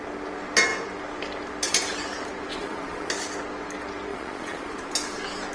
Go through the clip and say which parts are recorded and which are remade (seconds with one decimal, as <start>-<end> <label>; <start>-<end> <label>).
0.0-2.5 recorded; 2.5-3.1 remade; 3.1-4.1 recorded; 4.1-4.9 remade; 4.9-5.5 recorded